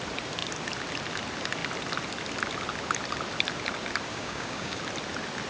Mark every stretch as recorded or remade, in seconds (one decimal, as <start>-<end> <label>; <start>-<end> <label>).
0.0-4.1 recorded; 4.1-4.8 remade; 4.8-5.5 recorded